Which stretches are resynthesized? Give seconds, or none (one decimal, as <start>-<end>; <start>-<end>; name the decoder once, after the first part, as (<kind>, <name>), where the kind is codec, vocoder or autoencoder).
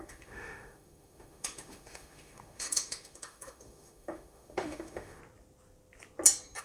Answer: 0.0-5.2 (autoencoder, DAC-VAE)